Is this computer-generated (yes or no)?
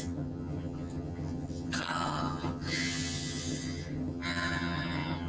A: yes